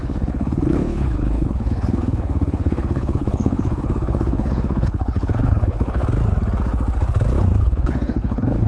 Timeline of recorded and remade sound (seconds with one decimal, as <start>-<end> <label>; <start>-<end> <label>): 0.0-6.0 remade; 6.0-7.6 recorded; 7.6-8.7 remade